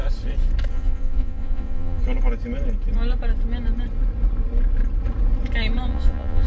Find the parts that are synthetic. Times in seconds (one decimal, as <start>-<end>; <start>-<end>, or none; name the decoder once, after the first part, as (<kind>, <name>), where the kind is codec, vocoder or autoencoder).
0.7-2.0 (vocoder, Vocos); 5.9-6.5